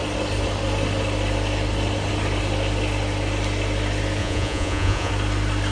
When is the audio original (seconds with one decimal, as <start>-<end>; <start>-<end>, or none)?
0.0-4.2; 5.1-5.7